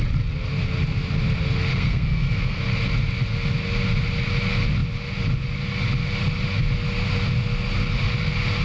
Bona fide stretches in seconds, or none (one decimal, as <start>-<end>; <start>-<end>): 0.0-1.7; 2.6-8.6